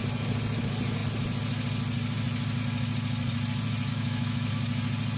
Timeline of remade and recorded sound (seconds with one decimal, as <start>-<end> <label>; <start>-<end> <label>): 0.0-3.9 recorded; 3.9-4.5 remade; 4.5-5.2 recorded